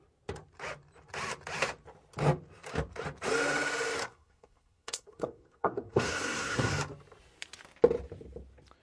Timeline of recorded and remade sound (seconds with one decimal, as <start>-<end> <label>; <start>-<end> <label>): 0.0-4.0 recorded; 4.0-6.7 remade; 6.7-8.8 recorded